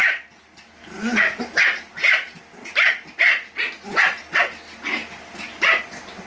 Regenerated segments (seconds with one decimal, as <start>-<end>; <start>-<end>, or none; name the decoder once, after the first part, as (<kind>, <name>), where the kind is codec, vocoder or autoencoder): 0.0-1.4 (vocoder, BigVGAN v2); 5.0-5.8